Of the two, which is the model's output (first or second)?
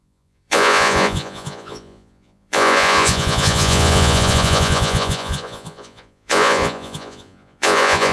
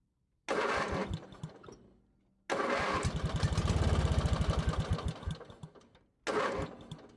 first